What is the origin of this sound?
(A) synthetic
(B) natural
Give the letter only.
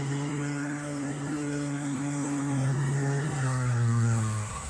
A